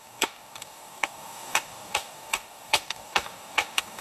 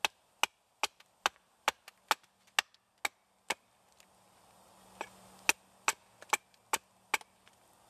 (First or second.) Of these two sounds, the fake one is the first